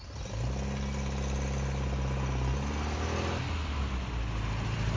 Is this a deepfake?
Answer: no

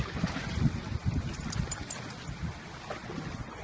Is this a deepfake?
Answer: no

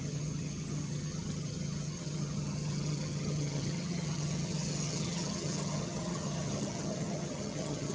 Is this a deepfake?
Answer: yes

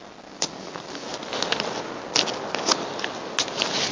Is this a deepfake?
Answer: no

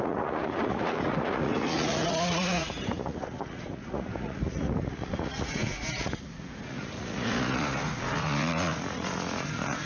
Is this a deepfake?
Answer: yes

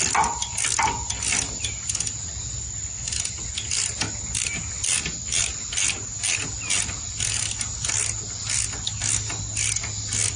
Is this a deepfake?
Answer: no